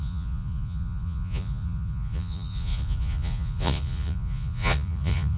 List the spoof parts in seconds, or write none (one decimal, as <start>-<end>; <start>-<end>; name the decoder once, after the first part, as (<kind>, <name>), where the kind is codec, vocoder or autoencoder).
0.0-5.4 (vocoder, Vocos)